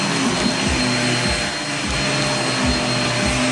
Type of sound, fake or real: real